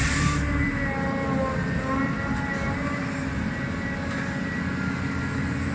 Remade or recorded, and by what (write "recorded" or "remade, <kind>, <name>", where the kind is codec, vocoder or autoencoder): recorded